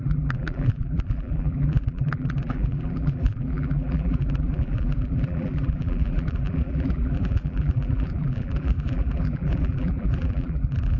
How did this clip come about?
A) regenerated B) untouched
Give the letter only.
A